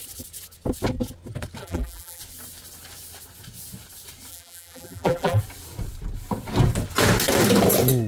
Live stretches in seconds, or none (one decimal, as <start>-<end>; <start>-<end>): 0.0-1.6; 2.2-4.3; 5.4-8.1